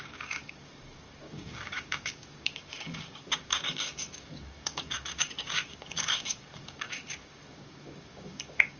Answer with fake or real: fake